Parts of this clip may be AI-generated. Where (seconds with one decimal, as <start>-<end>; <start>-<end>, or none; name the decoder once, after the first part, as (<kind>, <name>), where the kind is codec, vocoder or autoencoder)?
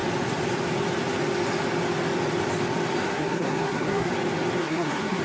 3.1-4.1 (codec, SNAC); 4.6-5.2